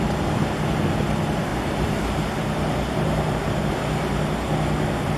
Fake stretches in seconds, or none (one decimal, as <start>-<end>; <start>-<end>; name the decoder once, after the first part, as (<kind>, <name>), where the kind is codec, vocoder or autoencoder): 1.5-3.7 (vocoder, BigVGAN v2)